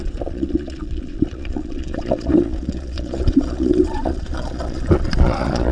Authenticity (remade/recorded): remade